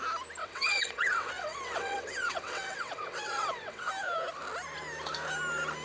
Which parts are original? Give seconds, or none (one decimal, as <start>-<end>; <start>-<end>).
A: 0.0-0.4; 3.9-5.8